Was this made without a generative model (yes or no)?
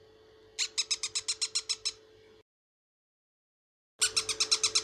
yes